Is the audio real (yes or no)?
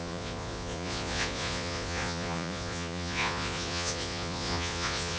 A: no